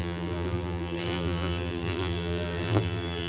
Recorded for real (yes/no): no